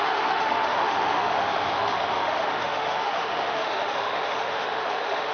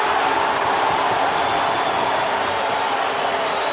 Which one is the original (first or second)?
second